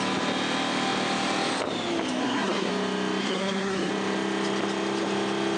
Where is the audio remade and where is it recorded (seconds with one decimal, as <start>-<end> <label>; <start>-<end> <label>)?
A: 0.0-2.2 recorded; 2.2-2.7 remade; 2.7-3.2 recorded; 3.2-3.9 remade; 3.9-5.6 recorded